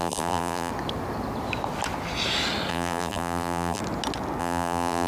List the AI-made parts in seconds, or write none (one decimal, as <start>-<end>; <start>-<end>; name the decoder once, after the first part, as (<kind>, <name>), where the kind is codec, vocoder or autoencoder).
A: 0.0-0.7 (vocoder, BigVGAN v2); 2.7-3.8; 4.4-5.1